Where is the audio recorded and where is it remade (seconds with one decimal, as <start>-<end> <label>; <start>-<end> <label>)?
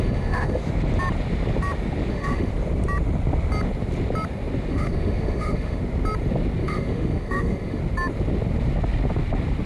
0.0-0.6 remade; 0.6-2.1 recorded; 2.1-2.5 remade; 2.5-4.7 recorded; 4.7-5.8 remade; 5.8-6.6 recorded; 6.6-7.8 remade; 7.8-9.7 recorded